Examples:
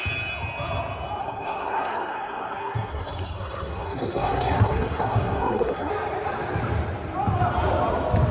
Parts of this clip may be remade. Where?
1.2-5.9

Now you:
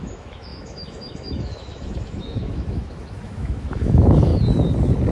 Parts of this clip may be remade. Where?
0.0-4.3

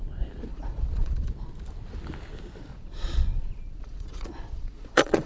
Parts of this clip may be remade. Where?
0.5-1.3; 2.7-5.3

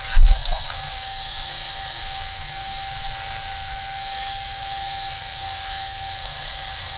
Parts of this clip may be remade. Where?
0.0-7.0

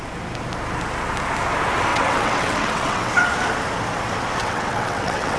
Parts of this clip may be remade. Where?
1.9-3.1; 4.4-5.4